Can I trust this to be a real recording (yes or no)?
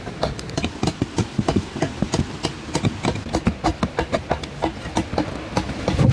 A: yes